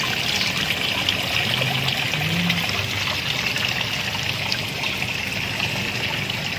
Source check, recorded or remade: recorded